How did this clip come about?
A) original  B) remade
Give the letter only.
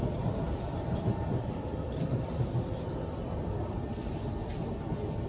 B